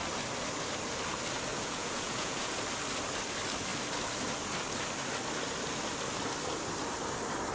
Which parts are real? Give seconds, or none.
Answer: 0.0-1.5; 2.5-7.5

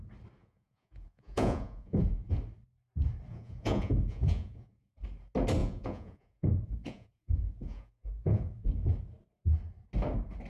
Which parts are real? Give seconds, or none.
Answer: 0.0-0.4; 2.4-3.3; 4.9-5.6; 8.9-10.5

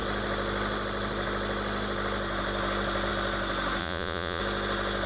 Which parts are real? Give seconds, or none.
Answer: 0.0-3.8; 4.4-5.1